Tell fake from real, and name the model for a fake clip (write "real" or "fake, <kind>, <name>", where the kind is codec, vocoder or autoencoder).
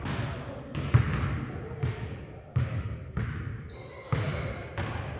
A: real